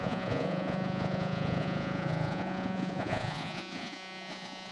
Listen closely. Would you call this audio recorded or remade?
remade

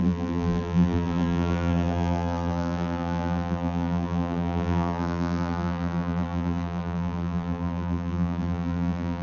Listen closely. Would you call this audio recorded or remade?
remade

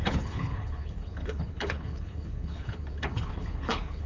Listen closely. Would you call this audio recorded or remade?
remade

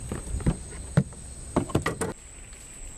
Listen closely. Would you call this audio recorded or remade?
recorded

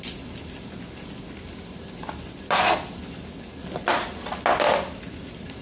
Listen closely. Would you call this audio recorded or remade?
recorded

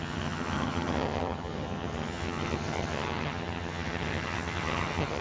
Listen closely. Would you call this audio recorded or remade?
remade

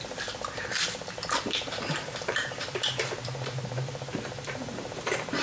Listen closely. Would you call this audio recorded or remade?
remade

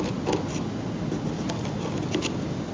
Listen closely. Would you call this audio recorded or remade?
recorded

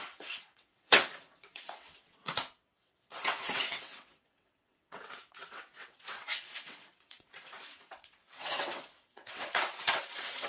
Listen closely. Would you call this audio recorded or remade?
remade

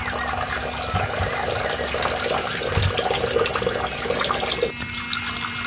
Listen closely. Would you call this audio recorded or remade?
recorded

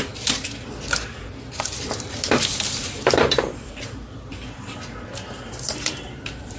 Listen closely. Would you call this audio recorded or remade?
remade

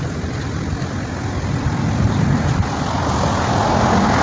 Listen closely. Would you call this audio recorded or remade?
recorded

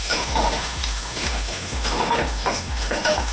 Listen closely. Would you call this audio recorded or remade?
remade